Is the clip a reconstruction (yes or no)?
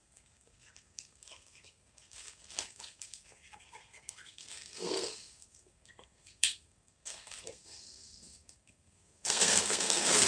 yes